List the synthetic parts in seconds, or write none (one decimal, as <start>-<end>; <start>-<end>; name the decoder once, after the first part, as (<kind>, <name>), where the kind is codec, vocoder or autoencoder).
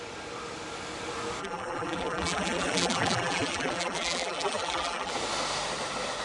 1.4-5.1 (vocoder, BigVGAN v2)